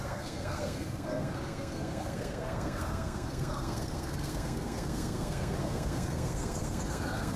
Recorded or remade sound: remade